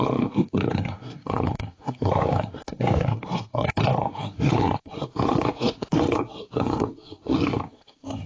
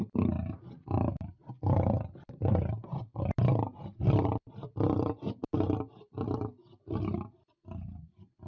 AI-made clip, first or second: first